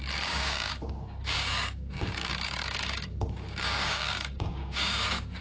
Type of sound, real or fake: fake